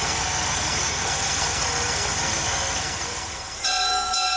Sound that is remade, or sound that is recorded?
remade